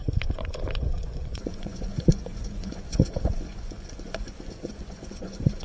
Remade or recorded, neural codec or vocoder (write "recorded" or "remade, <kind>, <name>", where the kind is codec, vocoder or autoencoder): remade, vocoder, Vocos